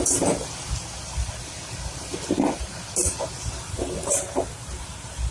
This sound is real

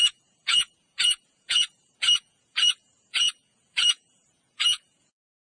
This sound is fake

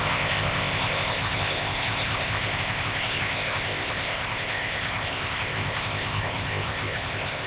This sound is fake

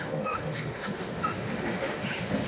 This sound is fake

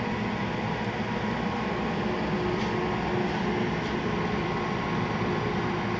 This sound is real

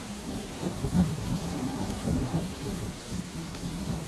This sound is fake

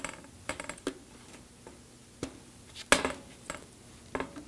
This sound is real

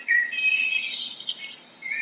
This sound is real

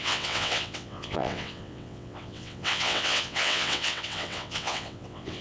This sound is fake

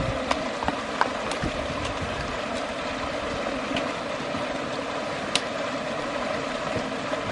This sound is real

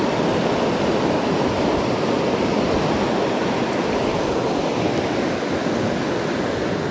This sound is real